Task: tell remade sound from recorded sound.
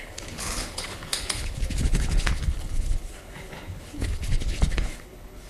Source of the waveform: remade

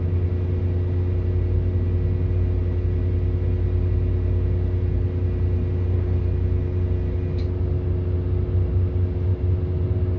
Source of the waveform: recorded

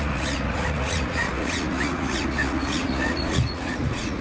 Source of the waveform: remade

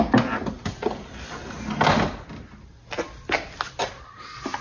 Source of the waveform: recorded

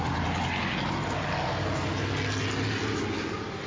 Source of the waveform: recorded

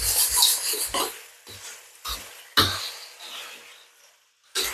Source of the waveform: recorded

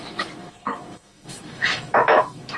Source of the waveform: remade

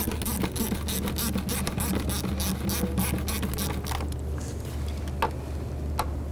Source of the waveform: recorded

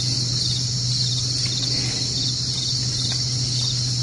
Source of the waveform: recorded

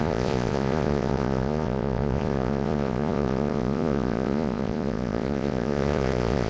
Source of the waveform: remade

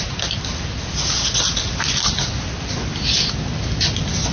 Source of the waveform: recorded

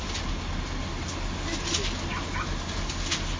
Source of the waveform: recorded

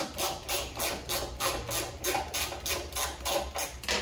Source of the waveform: recorded